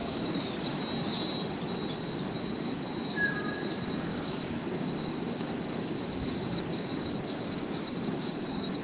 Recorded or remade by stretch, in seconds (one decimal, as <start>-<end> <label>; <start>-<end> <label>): 0.0-0.8 remade; 0.8-4.1 recorded; 4.1-8.8 remade